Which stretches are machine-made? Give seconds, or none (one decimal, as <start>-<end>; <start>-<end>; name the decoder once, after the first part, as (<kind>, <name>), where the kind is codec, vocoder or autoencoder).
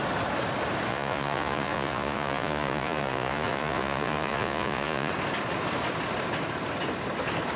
0.9-5.1 (vocoder, Vocos)